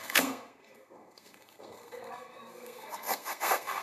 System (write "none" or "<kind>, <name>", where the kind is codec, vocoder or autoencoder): codec, SNAC